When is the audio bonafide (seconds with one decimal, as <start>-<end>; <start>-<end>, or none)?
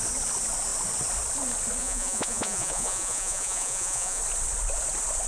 0.0-1.8; 4.2-5.3